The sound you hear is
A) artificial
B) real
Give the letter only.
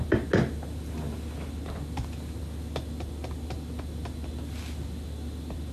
B